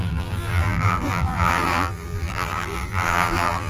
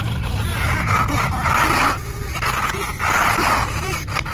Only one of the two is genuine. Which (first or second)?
second